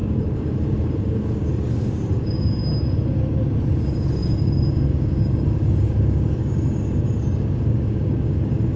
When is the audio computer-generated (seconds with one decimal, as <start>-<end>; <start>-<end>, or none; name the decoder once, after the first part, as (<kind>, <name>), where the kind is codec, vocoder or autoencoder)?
0.0-2.6 (codec, DAC); 3.8-8.8